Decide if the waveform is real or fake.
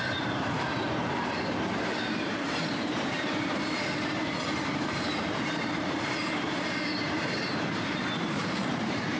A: fake